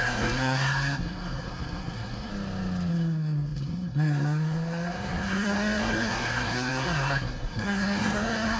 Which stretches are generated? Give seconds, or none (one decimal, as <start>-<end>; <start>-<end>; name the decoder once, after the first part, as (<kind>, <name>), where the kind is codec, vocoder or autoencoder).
0.0-2.3 (codec, SNAC); 2.9-8.6